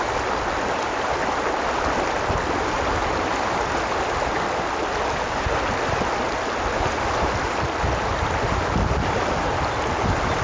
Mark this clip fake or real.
real